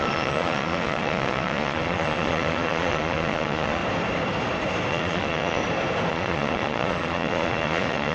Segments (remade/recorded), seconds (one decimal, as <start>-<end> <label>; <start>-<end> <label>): 0.0-3.8 remade; 3.8-4.9 recorded; 4.9-5.6 remade; 5.6-6.1 recorded; 6.1-8.1 remade